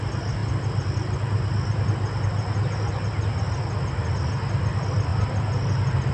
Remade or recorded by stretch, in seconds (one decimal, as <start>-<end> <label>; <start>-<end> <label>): 0.0-6.1 recorded